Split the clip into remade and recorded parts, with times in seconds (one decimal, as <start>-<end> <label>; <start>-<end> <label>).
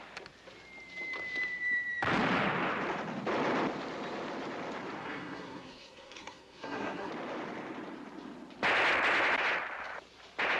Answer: 0.0-5.0 recorded; 5.0-7.1 remade; 7.1-10.6 recorded